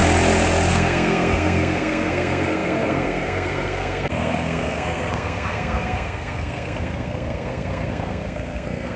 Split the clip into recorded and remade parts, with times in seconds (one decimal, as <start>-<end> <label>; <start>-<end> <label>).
0.0-0.7 recorded; 0.7-9.0 remade